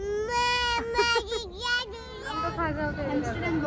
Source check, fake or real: real